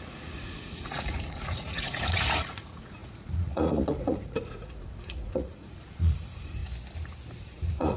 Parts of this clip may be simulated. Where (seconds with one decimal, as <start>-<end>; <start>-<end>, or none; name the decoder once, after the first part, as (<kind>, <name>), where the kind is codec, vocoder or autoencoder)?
0.0-6.6 (vocoder, Vocos); 7.4-8.0